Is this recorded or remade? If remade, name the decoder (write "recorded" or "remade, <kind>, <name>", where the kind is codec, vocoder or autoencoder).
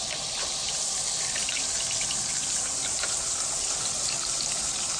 recorded